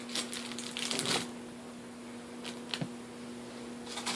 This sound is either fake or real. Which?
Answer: real